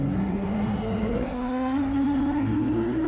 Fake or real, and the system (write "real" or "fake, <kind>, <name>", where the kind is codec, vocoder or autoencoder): fake, codec, SNAC